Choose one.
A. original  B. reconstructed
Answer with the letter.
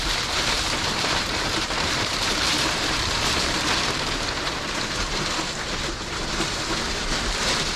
B